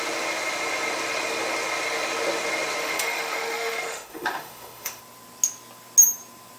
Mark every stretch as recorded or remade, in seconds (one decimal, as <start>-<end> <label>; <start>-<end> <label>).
0.0-2.8 recorded; 2.8-5.0 remade; 5.0-6.6 recorded